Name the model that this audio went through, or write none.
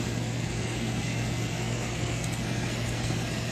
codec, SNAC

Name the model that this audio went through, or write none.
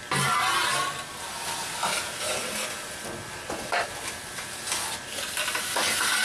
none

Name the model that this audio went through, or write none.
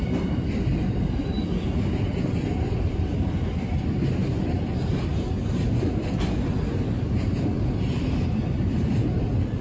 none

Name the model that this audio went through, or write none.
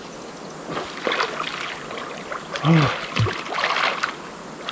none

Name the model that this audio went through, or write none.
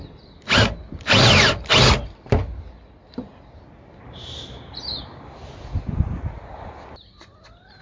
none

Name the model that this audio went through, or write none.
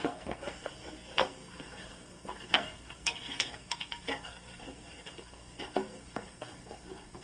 codec, SNAC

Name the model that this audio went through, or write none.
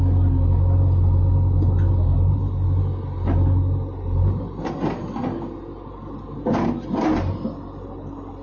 none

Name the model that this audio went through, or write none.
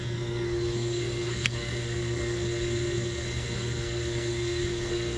codec, SNAC